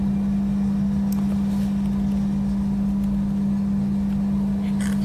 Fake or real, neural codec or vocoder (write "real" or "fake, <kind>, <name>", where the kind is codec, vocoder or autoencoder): real